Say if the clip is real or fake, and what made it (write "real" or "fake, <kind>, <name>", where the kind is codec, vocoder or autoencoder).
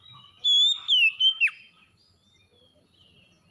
real